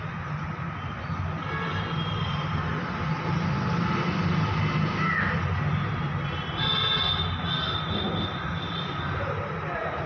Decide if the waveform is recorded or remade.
recorded